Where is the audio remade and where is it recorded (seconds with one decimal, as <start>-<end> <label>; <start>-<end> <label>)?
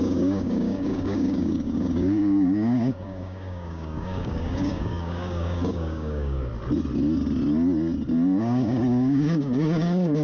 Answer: 0.0-6.5 remade; 6.5-8.4 recorded; 8.4-10.2 remade